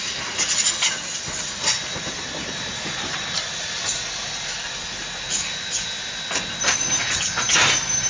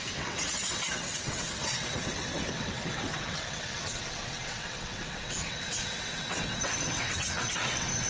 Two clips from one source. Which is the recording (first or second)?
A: first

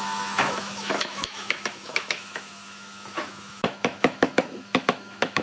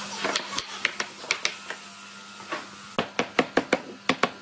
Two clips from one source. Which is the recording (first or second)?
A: second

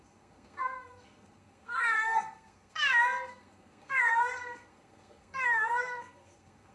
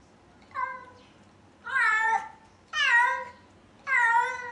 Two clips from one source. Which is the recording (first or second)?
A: second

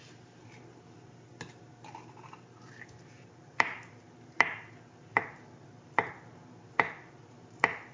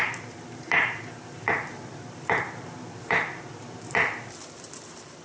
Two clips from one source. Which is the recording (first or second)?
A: first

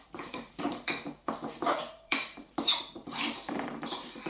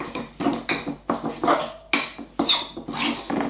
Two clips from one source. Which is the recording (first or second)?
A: second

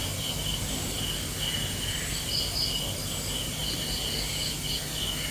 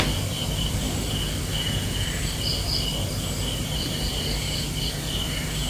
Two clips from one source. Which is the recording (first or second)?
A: first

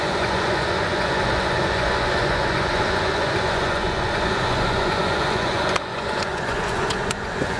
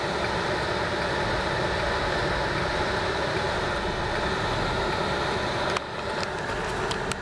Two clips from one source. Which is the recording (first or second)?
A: second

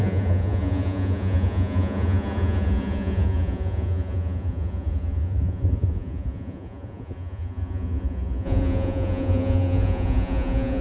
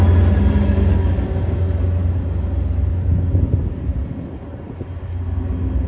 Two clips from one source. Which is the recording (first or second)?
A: second